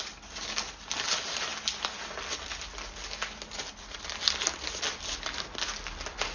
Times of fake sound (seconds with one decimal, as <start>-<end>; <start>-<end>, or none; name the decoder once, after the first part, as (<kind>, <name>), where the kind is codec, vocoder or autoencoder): none